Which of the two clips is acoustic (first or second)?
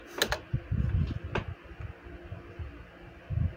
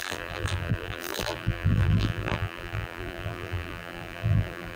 first